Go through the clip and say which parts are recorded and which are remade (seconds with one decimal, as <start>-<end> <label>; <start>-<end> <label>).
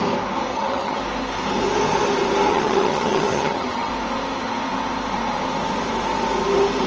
0.0-0.5 recorded; 0.5-1.0 remade; 1.0-2.5 recorded; 2.5-3.9 remade; 3.9-6.9 recorded